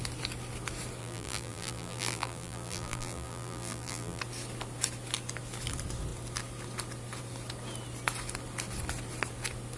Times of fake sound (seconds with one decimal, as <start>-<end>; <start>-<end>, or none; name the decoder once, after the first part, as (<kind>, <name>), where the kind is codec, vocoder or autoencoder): 1.0-4.2 (vocoder, BigVGAN v2)